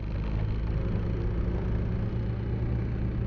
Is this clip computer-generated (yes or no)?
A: no